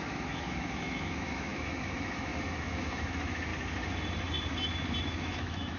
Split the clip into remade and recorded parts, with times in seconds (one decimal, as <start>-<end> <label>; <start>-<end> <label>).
0.0-3.5 remade; 3.5-5.0 recorded; 5.0-5.8 remade